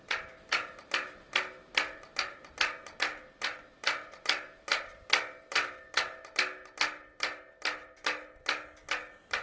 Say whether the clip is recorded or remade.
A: recorded